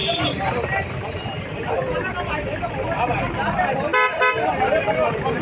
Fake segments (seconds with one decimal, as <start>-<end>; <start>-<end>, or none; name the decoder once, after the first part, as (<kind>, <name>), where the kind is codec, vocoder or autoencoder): none